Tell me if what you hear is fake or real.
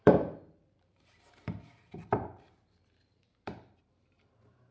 fake